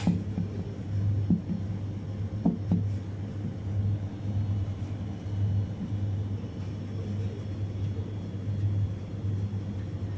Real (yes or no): yes